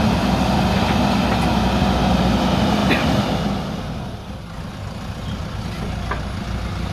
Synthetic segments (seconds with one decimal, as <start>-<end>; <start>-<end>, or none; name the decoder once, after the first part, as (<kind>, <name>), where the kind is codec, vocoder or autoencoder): none